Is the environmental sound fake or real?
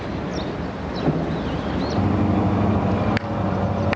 real